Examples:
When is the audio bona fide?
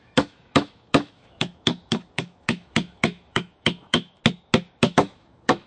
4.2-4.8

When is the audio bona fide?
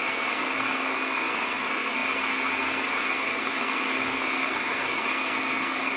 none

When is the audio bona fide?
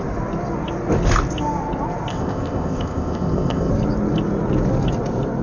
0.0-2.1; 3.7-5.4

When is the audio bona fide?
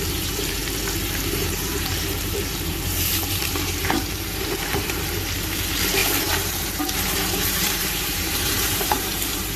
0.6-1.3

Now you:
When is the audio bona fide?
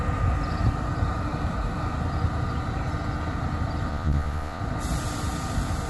0.0-3.9; 4.6-5.9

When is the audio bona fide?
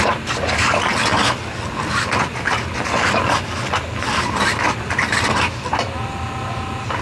0.0-7.0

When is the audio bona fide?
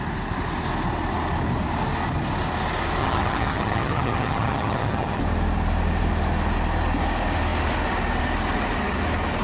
0.0-3.0; 5.2-9.4